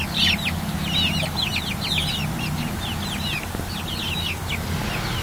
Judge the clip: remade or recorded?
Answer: recorded